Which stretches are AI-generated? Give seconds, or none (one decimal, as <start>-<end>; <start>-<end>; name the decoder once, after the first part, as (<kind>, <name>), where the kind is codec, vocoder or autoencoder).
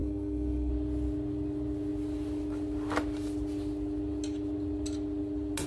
0.0-0.7 (codec, SNAC)